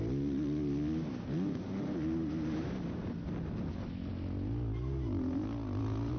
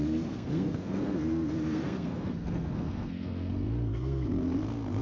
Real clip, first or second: first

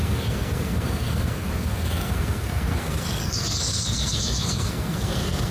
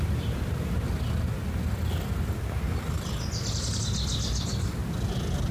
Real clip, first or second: second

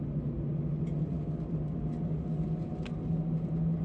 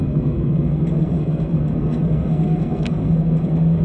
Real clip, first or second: first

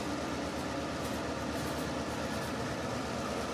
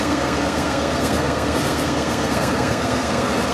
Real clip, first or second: first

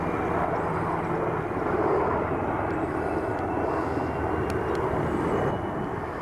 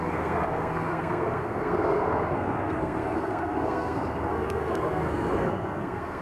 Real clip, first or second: first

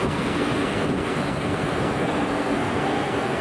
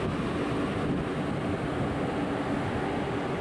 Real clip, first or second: second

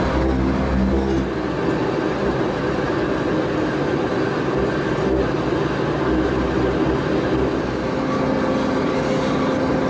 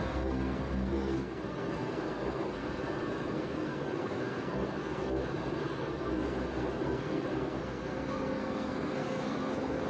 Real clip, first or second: first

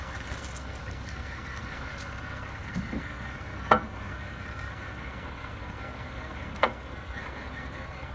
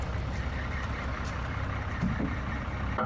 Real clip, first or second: second